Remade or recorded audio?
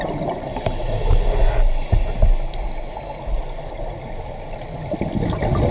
recorded